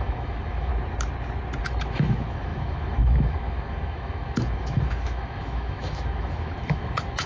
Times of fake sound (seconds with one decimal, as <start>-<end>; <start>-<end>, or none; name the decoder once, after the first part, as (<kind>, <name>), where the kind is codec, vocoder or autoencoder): 0.0-0.7 (autoencoder, DAC-VAE); 1.6-7.3